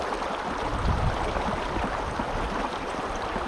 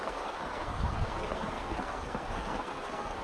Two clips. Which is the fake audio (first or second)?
second